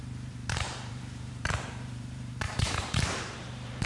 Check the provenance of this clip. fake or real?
fake